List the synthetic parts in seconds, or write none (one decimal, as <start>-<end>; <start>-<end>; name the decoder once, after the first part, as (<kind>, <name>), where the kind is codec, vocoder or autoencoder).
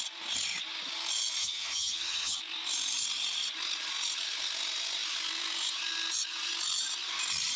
1.4-2.4 (vocoder, HiFi-GAN)